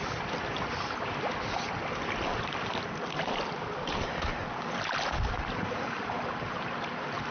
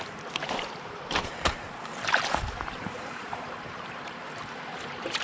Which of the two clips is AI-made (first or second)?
second